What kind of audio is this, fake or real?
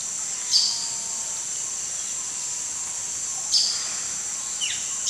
real